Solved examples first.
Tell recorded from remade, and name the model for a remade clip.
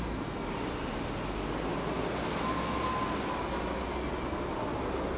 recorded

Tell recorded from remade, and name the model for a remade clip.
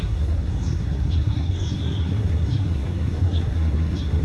remade, codec, SNAC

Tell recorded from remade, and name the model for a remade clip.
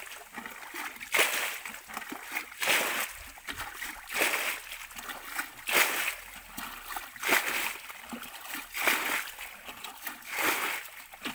recorded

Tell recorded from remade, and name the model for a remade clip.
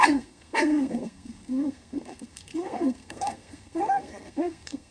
remade, codec, SNAC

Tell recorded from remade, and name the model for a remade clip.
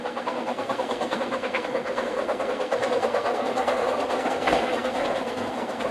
remade, codec, SNAC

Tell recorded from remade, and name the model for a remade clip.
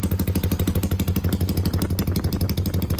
recorded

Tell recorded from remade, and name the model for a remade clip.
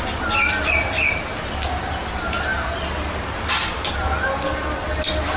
recorded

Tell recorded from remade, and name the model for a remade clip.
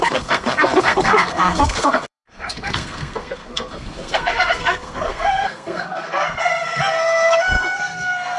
remade, codec, SNAC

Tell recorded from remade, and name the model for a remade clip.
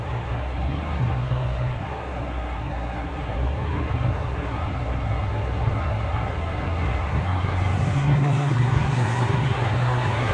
remade, codec, SNAC